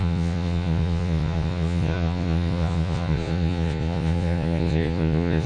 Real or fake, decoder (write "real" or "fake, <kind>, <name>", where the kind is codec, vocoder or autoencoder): fake, vocoder, Vocos